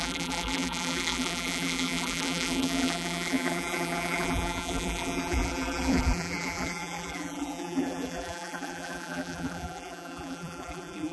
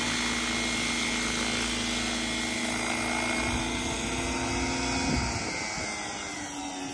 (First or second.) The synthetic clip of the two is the first